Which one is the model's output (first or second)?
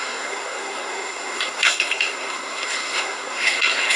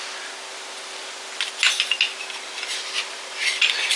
first